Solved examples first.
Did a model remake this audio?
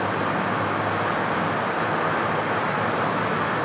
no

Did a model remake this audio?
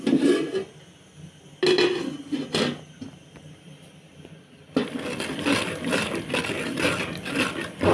no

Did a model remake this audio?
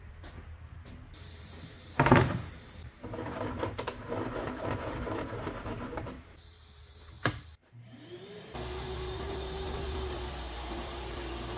yes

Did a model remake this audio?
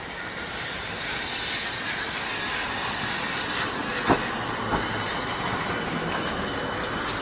no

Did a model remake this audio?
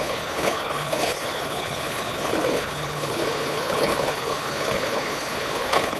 yes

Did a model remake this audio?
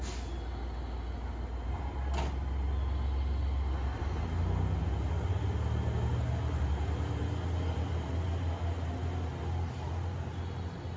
no